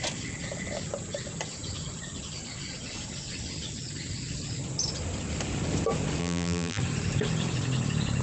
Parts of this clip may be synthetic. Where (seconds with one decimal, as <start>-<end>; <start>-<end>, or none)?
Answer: 6.2-6.8